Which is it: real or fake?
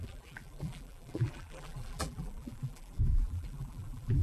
fake